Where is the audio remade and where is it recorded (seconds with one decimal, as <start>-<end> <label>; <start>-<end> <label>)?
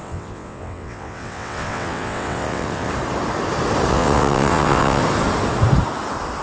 0.0-2.9 remade; 2.9-3.9 recorded; 3.9-5.0 remade; 5.0-6.4 recorded